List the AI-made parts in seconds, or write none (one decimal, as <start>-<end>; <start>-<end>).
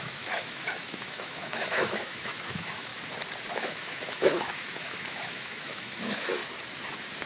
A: 0.0-2.9; 3.5-6.4